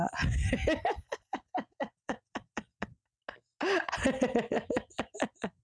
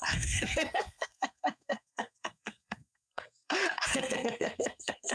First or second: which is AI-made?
second